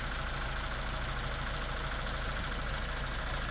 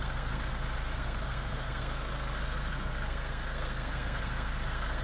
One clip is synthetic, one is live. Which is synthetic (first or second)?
second